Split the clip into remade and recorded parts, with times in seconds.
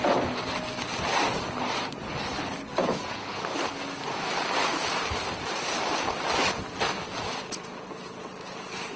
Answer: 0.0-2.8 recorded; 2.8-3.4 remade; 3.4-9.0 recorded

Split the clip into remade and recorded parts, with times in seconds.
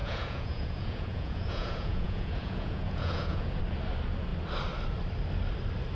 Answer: 0.0-3.6 remade; 3.6-6.0 recorded